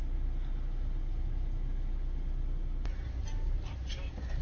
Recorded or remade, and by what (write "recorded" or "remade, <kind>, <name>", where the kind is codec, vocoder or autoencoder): recorded